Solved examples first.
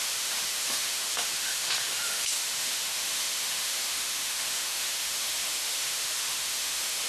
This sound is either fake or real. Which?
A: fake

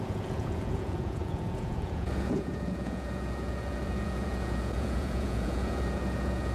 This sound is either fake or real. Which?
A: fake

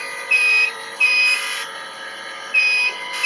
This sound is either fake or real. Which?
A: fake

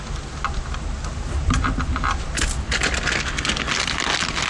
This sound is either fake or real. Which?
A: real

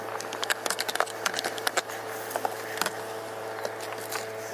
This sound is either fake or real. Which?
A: real